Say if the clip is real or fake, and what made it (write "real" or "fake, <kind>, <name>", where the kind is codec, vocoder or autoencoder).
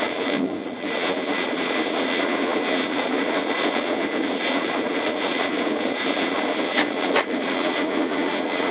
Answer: fake, vocoder, Vocos